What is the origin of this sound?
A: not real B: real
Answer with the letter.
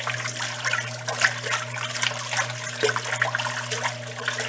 B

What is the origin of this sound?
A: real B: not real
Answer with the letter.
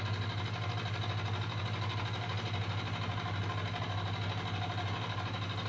A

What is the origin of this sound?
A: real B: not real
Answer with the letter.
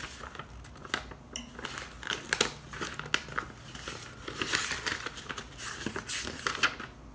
A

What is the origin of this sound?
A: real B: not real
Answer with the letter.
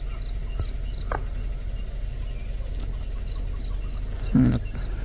A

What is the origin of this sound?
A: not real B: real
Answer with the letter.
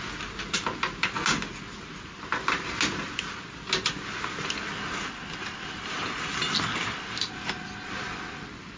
B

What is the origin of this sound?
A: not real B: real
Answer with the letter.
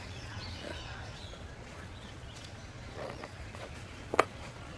A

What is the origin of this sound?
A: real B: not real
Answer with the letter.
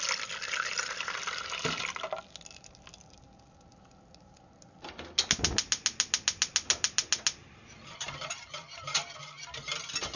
A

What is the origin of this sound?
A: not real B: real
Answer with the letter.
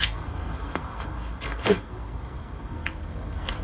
A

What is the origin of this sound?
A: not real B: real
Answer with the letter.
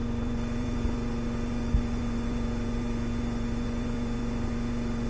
A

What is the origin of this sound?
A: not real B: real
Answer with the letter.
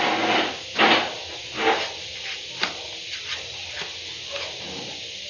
B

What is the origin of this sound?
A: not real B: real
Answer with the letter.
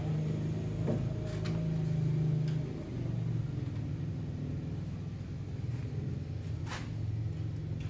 B